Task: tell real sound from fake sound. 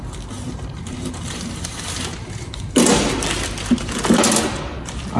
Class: real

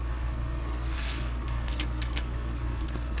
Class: fake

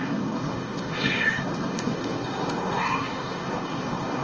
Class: fake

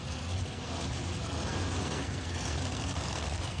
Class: fake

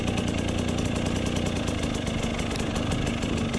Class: real